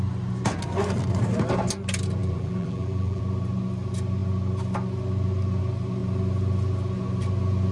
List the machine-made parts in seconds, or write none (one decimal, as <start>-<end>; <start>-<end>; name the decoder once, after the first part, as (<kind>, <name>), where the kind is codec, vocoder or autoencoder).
2.2-3.2 (vocoder, BigVGAN v2)